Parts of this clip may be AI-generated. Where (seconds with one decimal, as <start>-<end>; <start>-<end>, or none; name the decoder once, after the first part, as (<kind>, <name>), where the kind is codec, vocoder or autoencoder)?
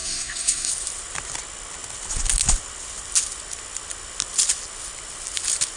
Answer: 0.0-0.7 (codec, SNAC)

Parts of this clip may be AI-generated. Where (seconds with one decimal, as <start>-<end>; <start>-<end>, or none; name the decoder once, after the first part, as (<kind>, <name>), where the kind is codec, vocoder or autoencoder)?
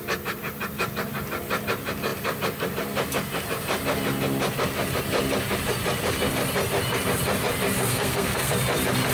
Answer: 7.9-8.5 (codec, SNAC)